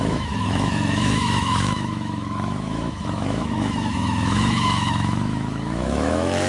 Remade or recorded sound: remade